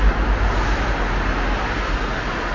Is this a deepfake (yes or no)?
no